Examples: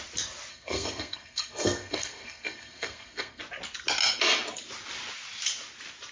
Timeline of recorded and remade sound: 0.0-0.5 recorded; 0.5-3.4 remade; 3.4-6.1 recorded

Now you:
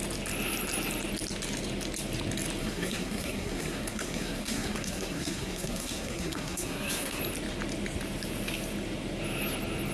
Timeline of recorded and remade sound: 0.0-2.6 recorded; 2.6-7.2 remade; 7.2-9.9 recorded

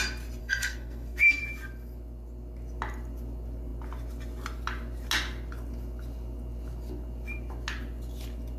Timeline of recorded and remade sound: 0.0-0.4 recorded; 0.4-1.4 remade; 1.4-8.6 recorded

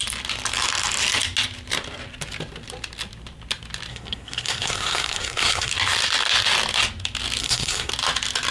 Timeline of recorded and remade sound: 0.0-3.9 recorded; 3.9-5.7 remade; 5.7-7.4 recorded; 7.4-7.9 remade; 7.9-8.5 recorded

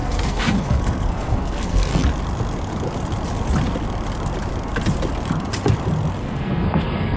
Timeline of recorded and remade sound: 0.0-1.9 remade; 1.9-6.2 recorded; 6.2-7.2 remade

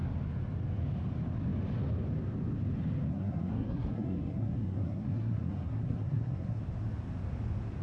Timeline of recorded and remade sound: 0.0-3.1 recorded; 3.1-6.6 remade; 6.6-7.8 recorded

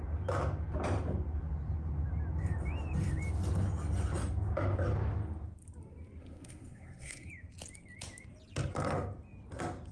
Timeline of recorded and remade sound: 0.0-6.2 recorded; 6.2-7.3 remade; 7.3-9.9 recorded